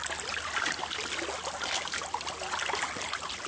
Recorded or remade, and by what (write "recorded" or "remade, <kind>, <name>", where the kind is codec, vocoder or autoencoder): recorded